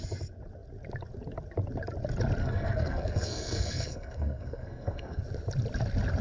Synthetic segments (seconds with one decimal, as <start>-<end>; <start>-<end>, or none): 2.4-5.2